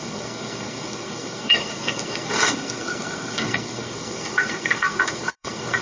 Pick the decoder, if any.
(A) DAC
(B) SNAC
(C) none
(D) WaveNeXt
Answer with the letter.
B